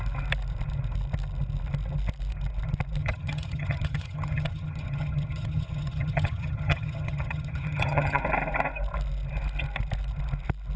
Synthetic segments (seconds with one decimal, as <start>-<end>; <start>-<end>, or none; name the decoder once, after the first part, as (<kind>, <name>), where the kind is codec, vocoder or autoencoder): 3.0-8.2 (vocoder, HiFi-GAN)